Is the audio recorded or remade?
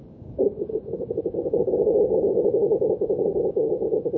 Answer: remade